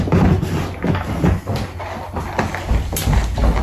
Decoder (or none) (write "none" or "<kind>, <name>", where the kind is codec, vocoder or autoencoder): none